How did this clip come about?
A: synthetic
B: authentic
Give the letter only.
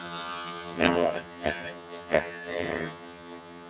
A